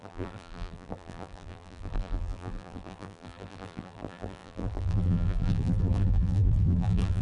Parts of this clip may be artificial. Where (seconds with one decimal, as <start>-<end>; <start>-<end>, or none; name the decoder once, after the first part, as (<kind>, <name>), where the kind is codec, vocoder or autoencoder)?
0.0-7.2 (vocoder, BigVGAN v2)